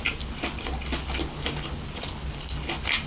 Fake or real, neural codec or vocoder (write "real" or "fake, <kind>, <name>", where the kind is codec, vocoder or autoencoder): real